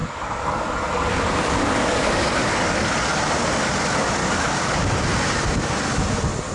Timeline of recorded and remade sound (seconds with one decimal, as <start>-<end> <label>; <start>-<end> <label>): 0.0-3.2 remade; 3.2-4.2 recorded; 4.2-4.7 remade; 4.7-6.5 recorded